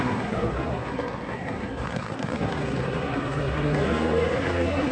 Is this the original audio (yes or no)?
no